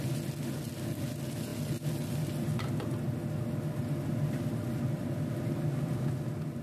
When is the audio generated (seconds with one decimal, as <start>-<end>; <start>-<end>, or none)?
none